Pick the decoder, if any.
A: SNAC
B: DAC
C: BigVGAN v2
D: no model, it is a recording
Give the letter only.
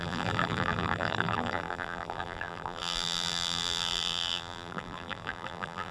C